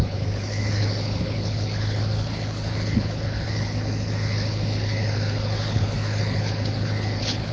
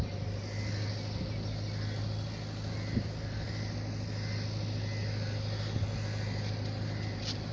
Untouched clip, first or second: second